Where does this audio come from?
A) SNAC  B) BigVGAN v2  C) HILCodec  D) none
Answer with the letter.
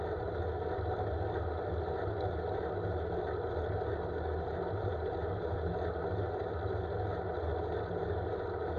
D